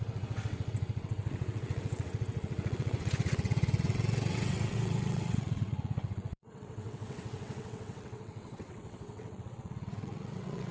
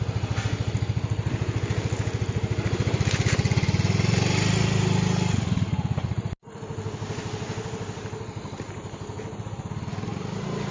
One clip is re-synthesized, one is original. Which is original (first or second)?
second